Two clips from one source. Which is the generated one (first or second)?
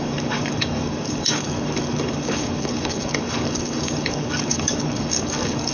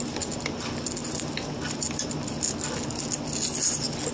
first